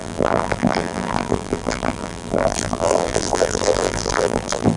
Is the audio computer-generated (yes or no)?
yes